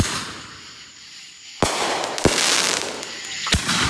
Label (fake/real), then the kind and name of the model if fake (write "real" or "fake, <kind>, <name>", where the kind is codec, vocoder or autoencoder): real